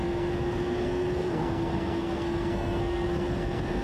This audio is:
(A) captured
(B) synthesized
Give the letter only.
B